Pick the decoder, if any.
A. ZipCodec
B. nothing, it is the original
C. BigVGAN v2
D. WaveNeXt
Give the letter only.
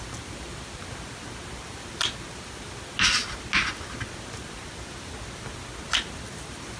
B